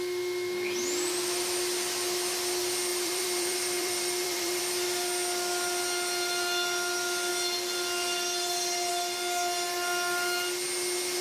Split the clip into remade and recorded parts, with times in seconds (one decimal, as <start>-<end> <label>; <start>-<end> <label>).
0.0-2.9 recorded; 2.9-4.6 remade; 4.6-11.2 recorded